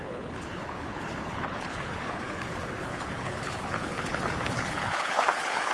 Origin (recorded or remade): remade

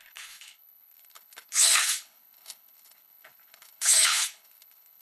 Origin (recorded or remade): remade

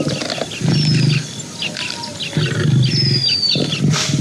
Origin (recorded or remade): recorded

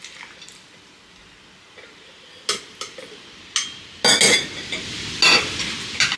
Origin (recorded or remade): recorded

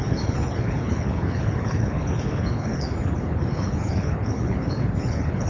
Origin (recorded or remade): remade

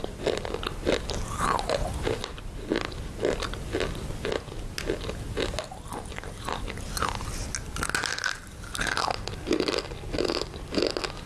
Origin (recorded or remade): recorded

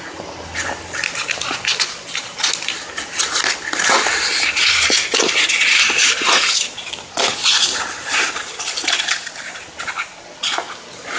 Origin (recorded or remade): recorded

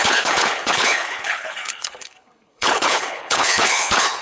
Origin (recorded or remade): remade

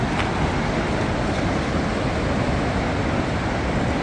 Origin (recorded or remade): recorded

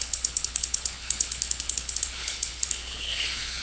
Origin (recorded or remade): remade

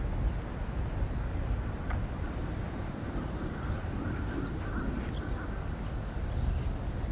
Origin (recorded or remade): recorded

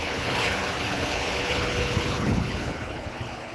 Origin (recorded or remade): remade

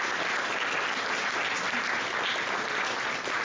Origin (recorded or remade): recorded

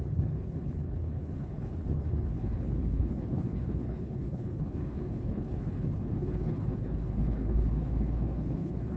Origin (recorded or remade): remade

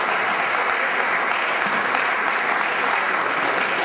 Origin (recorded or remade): recorded